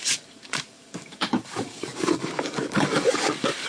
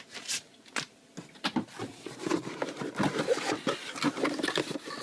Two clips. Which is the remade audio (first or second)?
first